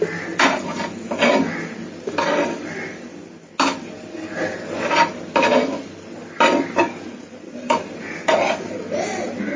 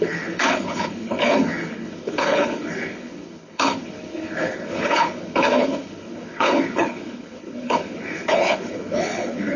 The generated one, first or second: second